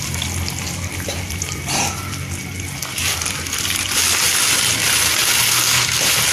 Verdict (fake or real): real